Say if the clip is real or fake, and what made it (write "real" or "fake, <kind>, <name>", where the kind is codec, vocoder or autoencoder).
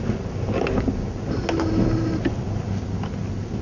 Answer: real